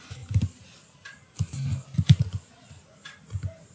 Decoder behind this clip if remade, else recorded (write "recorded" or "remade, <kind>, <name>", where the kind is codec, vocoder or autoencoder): recorded